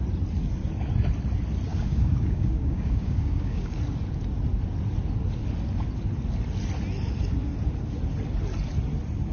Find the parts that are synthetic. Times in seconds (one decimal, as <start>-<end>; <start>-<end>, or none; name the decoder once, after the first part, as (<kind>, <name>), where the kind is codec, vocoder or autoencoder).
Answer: 1.7-3.8 (codec, DAC)